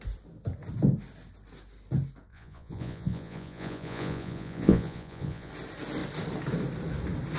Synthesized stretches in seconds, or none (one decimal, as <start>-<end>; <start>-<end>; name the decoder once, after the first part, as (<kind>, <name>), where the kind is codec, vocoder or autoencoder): 2.3-5.5 (vocoder, Vocos)

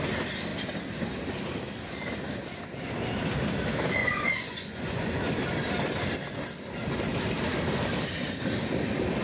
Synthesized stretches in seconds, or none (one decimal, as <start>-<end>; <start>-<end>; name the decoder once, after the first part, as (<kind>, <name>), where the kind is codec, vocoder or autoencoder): 4.0-5.1 (vocoder, Vocos)

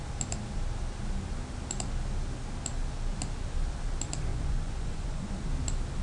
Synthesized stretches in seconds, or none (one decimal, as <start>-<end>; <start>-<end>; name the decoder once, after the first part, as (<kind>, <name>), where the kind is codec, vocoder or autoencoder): 4.3-5.3 (vocoder, Vocos)